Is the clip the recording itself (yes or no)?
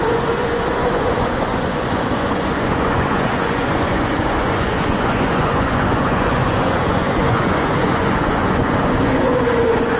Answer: no